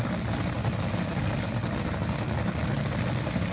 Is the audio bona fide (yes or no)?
yes